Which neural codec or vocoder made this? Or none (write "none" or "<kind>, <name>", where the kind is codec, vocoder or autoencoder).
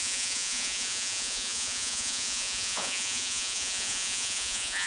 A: vocoder, Vocos